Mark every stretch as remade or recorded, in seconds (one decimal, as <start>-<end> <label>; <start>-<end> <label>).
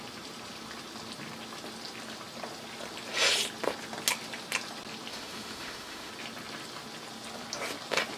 0.0-5.1 recorded; 5.1-6.1 remade; 6.1-8.2 recorded